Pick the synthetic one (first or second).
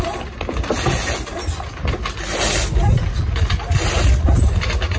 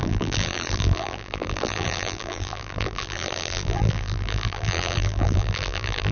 second